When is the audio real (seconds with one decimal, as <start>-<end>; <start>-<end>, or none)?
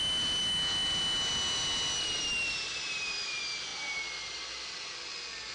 0.0-5.5